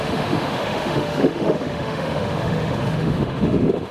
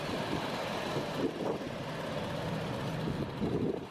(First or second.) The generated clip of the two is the first